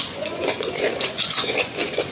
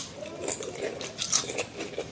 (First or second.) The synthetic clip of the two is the first